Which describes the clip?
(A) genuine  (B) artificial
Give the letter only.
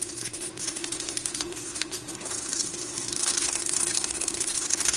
B